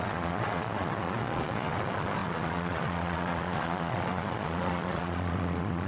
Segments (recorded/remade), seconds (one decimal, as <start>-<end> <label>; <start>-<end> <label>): 0.0-5.9 remade